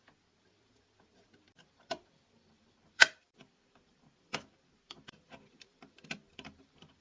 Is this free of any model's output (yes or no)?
no